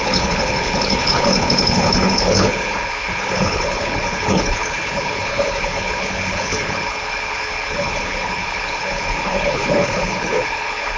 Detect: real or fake fake